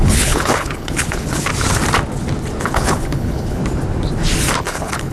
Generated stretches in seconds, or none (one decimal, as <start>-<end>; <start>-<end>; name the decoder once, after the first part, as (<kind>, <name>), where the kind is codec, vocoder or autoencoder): 0.0-1.5 (codec, HILCodec); 2.6-3.6; 4.6-5.1